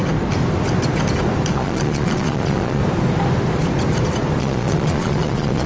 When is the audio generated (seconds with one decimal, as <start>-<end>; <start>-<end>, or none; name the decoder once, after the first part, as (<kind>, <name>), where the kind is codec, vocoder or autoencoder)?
1.5-2.8 (vocoder, Vocos); 4.4-5.7